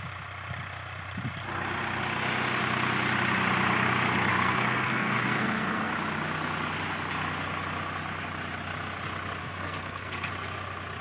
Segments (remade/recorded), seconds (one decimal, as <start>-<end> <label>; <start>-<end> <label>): 0.0-4.3 recorded; 4.3-5.9 remade; 5.9-9.4 recorded; 9.4-10.3 remade; 10.3-11.0 recorded